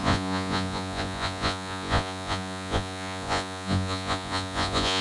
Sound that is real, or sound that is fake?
fake